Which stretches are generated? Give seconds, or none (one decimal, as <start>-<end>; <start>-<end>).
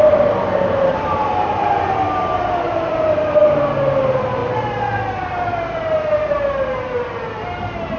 none